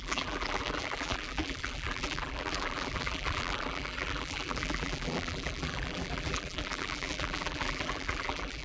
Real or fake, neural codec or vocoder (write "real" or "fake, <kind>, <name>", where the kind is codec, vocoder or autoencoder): fake, vocoder, BigVGAN v2